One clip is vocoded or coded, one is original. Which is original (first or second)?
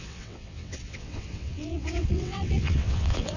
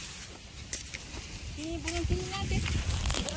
second